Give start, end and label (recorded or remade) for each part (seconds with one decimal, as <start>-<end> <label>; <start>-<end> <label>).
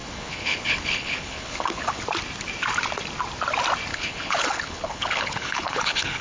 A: 0.0-2.0 remade; 2.0-3.9 recorded; 3.9-6.2 remade